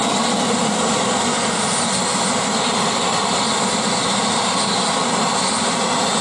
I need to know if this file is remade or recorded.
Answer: recorded